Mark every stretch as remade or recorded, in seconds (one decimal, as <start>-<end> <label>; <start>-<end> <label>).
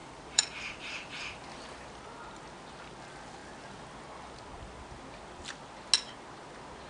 0.0-2.0 remade; 2.0-6.9 recorded